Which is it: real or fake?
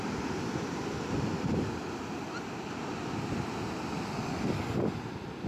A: real